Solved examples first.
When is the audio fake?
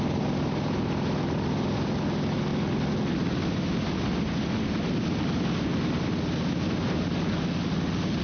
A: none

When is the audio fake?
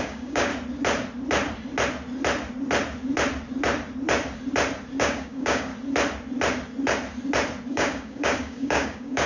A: 0.0-0.5 (codec, DAC); 5.0-5.7; 7.7-9.3